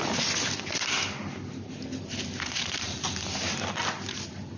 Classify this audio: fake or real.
real